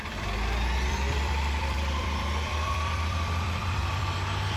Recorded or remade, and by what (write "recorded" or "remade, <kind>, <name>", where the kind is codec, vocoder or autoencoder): remade, vocoder, BigVGAN v2